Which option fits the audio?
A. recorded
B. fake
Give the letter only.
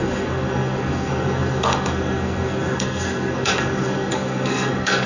B